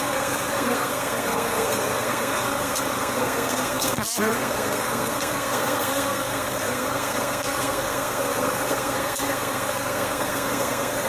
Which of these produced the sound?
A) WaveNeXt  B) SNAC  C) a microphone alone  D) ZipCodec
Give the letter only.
B